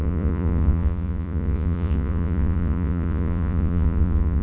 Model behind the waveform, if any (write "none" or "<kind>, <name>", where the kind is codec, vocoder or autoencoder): vocoder, Vocos